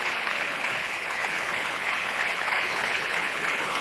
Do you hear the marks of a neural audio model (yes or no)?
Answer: yes